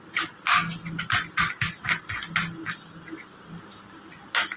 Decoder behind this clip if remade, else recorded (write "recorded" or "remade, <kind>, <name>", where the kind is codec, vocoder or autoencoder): recorded